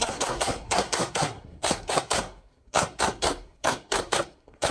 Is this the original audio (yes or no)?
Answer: no